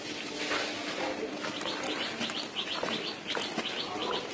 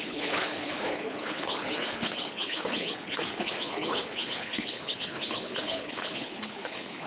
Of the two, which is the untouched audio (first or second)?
first